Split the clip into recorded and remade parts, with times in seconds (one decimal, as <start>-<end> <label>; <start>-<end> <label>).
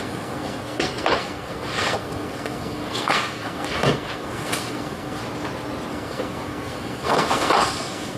0.0-5.2 remade; 5.2-5.9 recorded; 5.9-8.2 remade